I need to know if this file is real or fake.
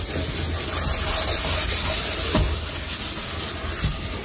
real